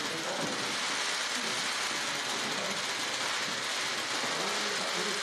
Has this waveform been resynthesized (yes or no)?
no